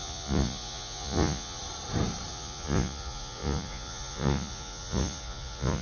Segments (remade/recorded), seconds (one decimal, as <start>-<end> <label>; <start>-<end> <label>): 0.0-1.6 remade; 1.6-2.3 recorded; 2.3-5.8 remade